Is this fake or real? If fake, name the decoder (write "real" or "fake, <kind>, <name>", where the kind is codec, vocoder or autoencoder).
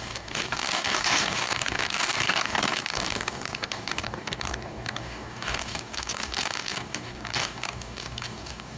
fake, codec, DAC